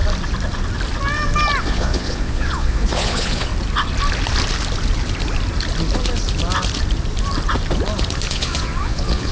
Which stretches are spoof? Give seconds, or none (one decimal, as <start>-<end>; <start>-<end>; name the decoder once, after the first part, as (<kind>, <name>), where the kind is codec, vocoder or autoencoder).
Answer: 1.6-3.5 (vocoder, Vocos); 8.3-9.3